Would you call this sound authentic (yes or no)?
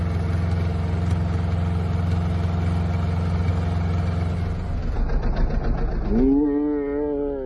yes